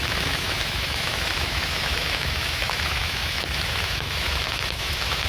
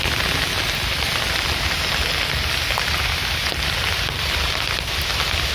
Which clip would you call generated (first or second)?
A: first